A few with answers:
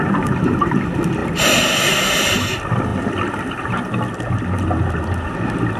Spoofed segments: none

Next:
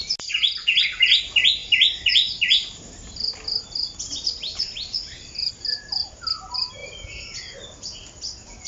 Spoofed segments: 1.6-5.5 (vocoder, BigVGAN v2); 6.8-7.4

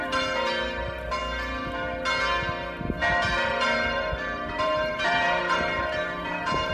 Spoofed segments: 0.0-1.2 (vocoder, BigVGAN v2); 3.1-6.7

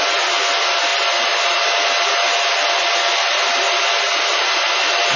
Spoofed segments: none